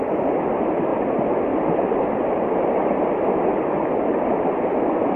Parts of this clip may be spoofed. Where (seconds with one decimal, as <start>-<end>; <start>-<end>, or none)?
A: none

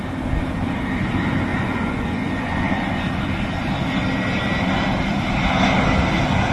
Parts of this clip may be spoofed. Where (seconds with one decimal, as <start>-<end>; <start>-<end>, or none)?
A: 1.5-3.0

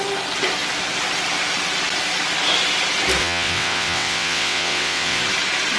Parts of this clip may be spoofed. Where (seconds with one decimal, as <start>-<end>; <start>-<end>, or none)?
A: 3.2-5.2

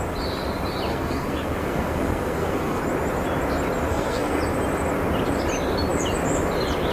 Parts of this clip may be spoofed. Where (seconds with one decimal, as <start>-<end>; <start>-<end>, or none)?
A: 0.9-2.8; 3.9-4.4

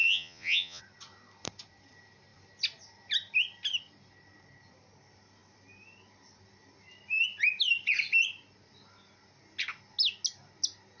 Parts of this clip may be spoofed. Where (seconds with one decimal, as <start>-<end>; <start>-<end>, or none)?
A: 0.0-0.8